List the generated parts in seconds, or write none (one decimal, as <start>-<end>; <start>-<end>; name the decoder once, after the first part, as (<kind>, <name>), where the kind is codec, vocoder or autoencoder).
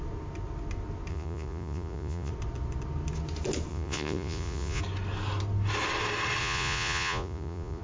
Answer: 1.1-2.3 (vocoder, Vocos); 3.7-4.8; 6.4-7.8